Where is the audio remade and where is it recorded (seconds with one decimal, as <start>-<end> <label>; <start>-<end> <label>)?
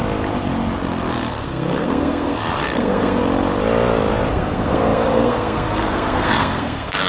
0.0-1.3 recorded; 1.3-3.2 remade; 3.2-4.3 recorded; 4.3-7.1 remade